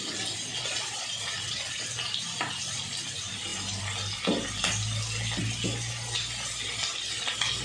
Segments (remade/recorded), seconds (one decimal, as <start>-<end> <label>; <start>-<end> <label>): 0.0-0.5 recorded; 0.5-1.8 remade; 1.8-7.6 recorded